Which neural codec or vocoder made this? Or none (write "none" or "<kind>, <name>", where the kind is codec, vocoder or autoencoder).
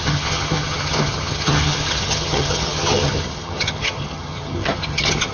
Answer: vocoder, HiFi-GAN